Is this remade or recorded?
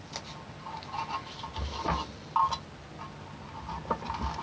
recorded